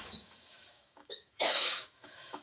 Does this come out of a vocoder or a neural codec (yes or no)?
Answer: yes